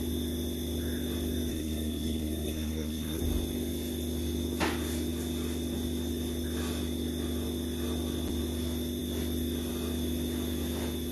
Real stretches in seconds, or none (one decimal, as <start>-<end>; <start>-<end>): 0.0-1.5; 3.2-11.1